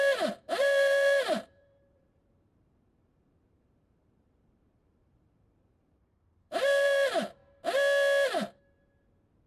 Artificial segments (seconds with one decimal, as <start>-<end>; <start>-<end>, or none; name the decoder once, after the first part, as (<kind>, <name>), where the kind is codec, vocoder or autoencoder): 0.0-7.4 (vocoder, BigVGAN v2)